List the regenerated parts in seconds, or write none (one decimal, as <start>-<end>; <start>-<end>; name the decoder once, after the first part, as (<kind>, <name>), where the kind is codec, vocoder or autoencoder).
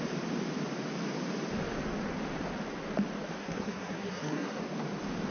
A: 3.4-4.6 (codec, SNAC)